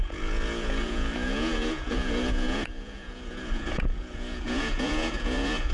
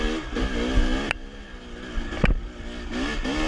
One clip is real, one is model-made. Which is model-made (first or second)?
first